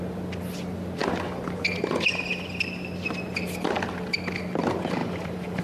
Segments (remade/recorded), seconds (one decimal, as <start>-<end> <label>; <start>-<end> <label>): 0.0-5.0 recorded; 5.0-5.6 remade